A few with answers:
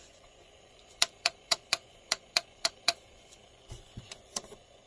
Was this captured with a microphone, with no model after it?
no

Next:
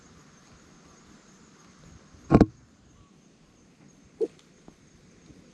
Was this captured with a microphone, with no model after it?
yes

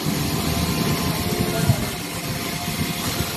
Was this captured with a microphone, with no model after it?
yes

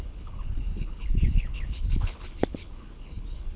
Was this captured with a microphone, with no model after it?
no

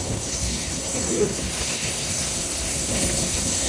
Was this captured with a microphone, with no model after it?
no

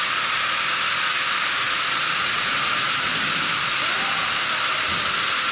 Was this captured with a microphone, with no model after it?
yes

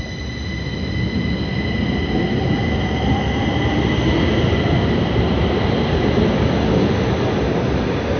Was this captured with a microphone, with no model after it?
yes